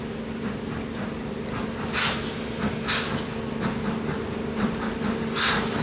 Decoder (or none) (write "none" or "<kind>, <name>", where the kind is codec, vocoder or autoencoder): none